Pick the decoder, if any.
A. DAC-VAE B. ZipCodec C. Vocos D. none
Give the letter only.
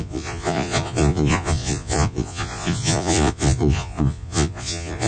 C